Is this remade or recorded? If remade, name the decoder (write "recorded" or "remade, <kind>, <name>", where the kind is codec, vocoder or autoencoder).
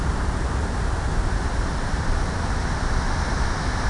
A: recorded